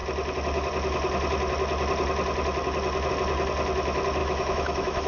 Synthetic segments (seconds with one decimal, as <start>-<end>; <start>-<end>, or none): 4.2-5.1